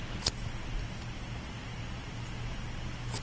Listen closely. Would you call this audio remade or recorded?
recorded